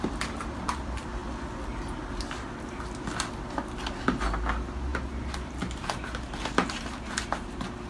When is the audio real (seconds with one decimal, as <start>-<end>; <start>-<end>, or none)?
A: 0.0-7.9